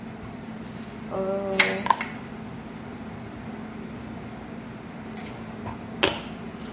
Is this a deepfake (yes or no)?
no